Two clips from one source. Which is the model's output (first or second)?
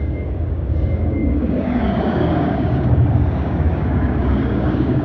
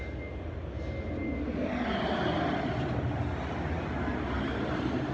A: first